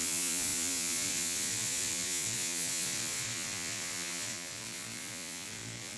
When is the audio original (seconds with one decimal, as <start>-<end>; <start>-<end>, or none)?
none

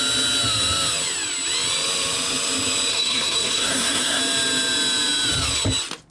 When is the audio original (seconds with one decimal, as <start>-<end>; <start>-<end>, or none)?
0.0-2.9; 4.2-6.1

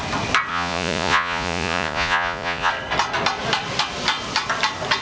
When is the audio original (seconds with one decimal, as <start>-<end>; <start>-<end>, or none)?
0.0-0.5; 2.7-5.0

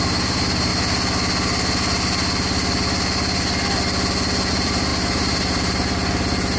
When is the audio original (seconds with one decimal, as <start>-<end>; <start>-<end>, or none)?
0.7-4.5

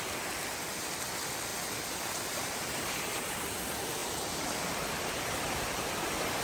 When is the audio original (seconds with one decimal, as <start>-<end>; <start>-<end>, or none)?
0.0-1.5; 3.6-4.0; 5.9-6.4

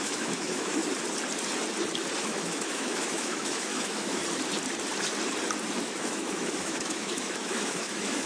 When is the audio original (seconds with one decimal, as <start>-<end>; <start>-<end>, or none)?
0.8-2.2; 4.2-5.8